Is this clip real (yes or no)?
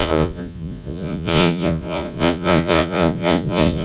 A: no